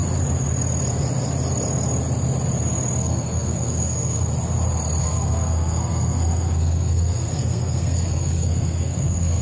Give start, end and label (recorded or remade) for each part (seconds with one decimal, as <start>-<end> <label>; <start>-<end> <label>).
0.0-3.0 recorded; 3.0-4.3 remade; 4.3-5.0 recorded; 5.0-9.4 remade